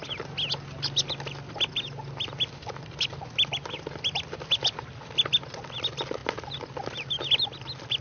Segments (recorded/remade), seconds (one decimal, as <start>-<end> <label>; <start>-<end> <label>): 0.0-8.0 recorded

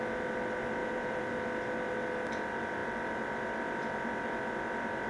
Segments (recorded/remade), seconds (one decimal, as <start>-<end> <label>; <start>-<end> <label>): 0.0-0.8 recorded; 0.8-1.3 remade; 1.3-5.1 recorded

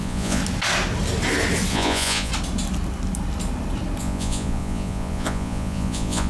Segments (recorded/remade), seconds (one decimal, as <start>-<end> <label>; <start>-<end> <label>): 0.0-0.4 remade; 0.4-1.7 recorded; 1.7-2.3 remade; 2.3-4.0 recorded; 4.0-6.3 remade